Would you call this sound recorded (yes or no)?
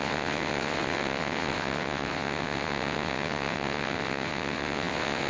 no